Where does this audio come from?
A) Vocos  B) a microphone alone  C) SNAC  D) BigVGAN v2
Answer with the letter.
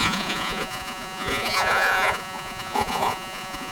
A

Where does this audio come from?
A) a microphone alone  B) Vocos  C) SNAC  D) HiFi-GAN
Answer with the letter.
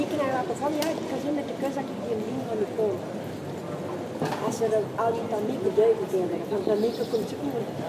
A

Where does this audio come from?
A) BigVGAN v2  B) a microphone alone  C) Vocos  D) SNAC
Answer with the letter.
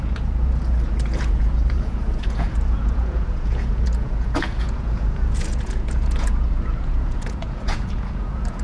C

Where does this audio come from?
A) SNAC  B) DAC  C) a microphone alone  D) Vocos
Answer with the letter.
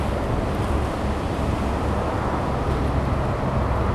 C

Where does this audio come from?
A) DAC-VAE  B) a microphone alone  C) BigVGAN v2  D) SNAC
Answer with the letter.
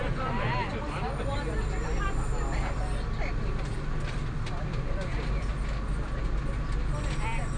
B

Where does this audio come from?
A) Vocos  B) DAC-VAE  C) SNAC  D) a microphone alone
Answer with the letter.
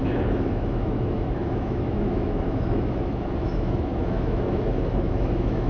B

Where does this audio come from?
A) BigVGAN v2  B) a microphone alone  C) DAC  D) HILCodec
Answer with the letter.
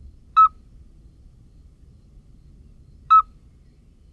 B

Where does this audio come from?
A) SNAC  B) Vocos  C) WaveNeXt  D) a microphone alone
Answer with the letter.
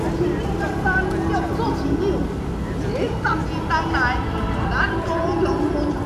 D